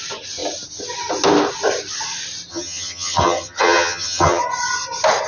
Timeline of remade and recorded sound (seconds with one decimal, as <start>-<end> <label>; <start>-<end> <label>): 0.0-2.5 recorded; 2.5-4.4 remade; 4.4-5.3 recorded